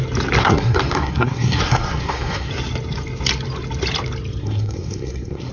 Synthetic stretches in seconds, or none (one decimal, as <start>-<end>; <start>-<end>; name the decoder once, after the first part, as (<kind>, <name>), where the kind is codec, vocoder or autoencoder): 0.4-2.5 (codec, SNAC); 4.4-5.5

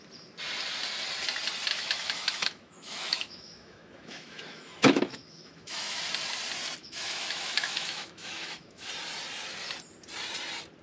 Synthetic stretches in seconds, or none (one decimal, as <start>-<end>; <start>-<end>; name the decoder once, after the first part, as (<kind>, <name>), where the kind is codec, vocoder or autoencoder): 1.7-6.0 (autoencoder, DAC-VAE); 6.8-8.9

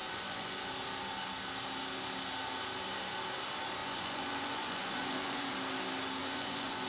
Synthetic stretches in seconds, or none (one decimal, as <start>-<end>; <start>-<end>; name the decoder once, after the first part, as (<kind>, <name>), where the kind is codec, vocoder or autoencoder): 0.0-0.7 (vocoder, Vocos); 3.8-5.5; 6.2-6.9

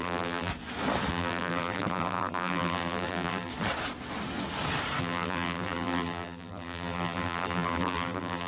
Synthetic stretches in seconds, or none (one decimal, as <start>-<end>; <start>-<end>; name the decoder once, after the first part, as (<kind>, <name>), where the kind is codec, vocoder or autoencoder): 0.0-0.5 (vocoder, BigVGAN v2); 1.1-3.5; 5.0-8.5

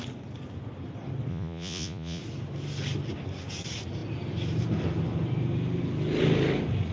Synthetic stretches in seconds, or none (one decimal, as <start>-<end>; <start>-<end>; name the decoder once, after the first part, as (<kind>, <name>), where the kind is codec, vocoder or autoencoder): 1.3-2.2 (vocoder, Vocos)

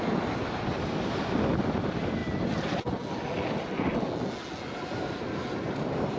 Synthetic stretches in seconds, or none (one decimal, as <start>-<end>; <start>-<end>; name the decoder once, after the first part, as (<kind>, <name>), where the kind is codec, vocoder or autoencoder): none